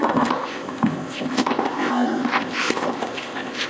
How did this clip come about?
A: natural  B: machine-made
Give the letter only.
B